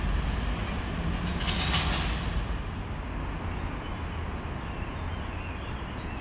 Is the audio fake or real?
real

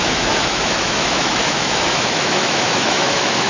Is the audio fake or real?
fake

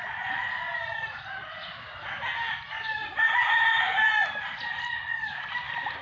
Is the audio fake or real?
real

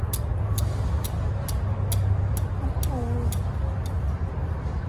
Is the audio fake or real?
real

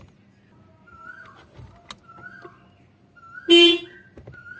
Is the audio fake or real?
real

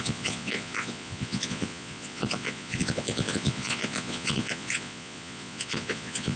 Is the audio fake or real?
fake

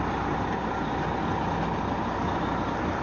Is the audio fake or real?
real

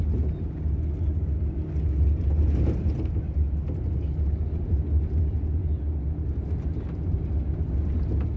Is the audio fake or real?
real